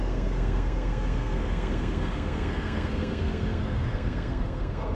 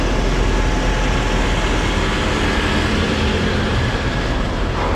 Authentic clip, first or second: second